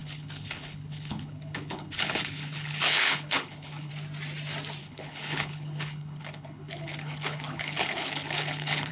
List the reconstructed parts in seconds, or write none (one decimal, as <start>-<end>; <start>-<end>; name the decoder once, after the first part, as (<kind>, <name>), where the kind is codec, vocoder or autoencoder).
0.0-3.9 (codec, HILCodec); 4.8-8.9